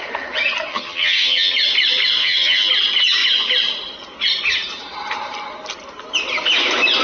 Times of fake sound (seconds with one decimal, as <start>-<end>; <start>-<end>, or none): 0.7-1.5; 2.2-2.7